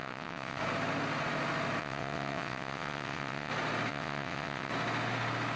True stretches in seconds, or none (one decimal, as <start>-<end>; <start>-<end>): 0.6-1.8; 3.5-3.9; 4.7-5.6